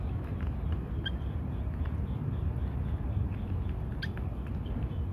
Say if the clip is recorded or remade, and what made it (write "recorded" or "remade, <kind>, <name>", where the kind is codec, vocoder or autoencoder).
recorded